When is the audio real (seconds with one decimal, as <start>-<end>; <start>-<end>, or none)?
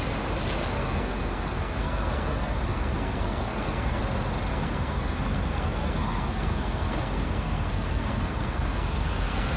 0.0-0.6; 4.0-4.5